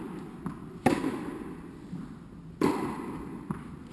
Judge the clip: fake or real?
real